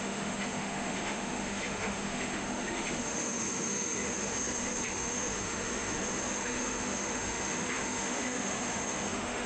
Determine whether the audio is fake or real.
fake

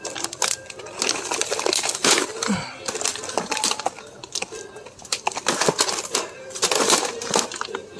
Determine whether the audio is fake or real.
real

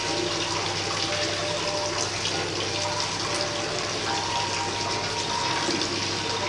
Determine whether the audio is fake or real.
real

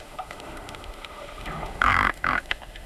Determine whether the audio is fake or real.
fake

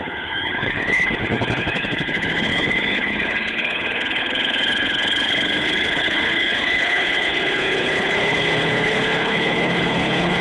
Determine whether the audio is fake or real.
fake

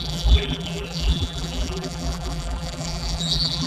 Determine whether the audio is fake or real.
fake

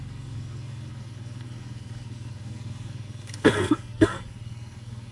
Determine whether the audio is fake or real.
fake